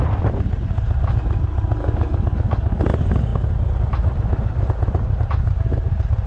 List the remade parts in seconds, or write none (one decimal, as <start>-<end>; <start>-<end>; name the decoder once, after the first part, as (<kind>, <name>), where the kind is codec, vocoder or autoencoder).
1.8-2.8 (codec, DAC)